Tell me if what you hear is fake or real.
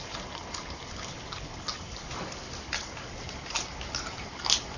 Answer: real